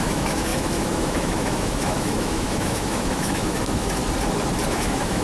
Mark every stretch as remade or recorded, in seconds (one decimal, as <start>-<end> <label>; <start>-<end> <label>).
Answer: 0.0-4.0 remade; 4.0-4.7 recorded; 4.7-5.2 remade